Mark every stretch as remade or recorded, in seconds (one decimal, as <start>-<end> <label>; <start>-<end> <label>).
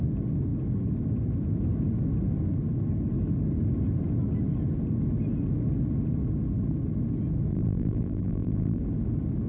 0.0-7.5 recorded; 7.5-8.8 remade; 8.8-9.5 recorded